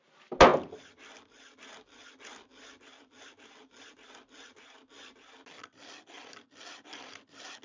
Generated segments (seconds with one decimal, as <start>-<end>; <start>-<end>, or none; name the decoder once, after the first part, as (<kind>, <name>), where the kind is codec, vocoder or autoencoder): none